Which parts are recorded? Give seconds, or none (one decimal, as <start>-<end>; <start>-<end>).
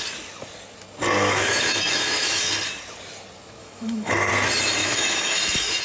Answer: 0.0-1.2; 2.5-3.6; 4.3-4.8